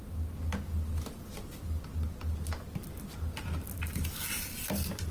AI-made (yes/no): no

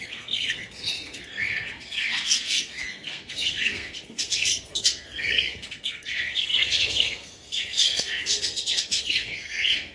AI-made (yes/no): yes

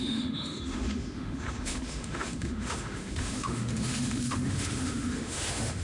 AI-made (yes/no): yes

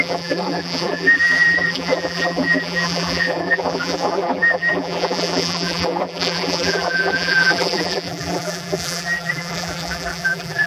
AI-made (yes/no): yes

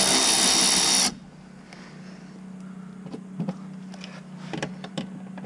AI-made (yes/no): no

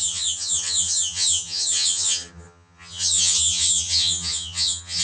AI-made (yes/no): yes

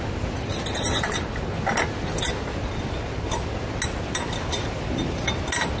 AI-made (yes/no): no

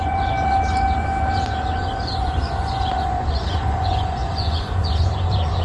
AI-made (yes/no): yes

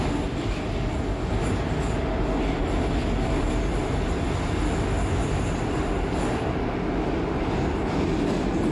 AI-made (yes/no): no